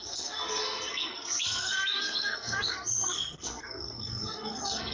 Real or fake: fake